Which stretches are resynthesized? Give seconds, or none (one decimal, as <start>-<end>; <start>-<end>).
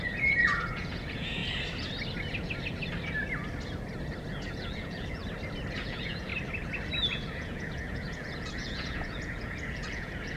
0.0-1.4; 4.5-5.2; 5.7-6.3; 7.1-10.4